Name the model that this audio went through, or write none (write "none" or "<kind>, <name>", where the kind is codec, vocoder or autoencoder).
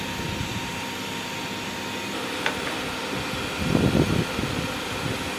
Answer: none